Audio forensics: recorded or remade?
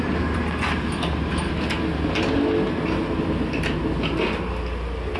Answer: recorded